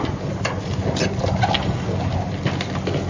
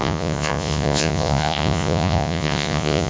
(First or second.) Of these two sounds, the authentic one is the first